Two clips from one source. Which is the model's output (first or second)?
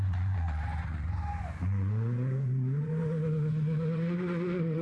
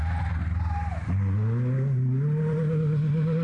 first